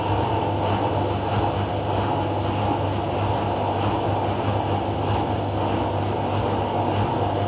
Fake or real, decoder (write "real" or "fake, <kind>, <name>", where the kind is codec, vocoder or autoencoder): real